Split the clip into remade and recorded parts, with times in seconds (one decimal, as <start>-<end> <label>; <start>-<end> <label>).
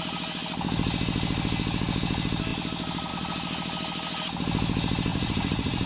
0.0-5.1 recorded; 5.1-5.9 remade